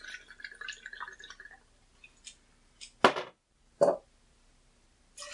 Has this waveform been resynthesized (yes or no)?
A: no